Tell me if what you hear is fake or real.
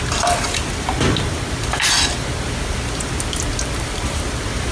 real